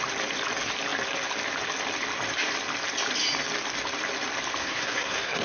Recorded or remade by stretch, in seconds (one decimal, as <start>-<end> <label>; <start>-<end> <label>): 0.0-4.6 recorded; 4.6-5.4 remade